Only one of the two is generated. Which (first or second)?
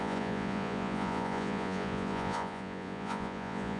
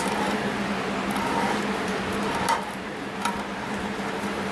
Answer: first